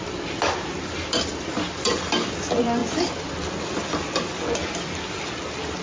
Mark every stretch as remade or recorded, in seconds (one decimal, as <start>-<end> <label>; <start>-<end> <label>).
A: 0.0-5.8 recorded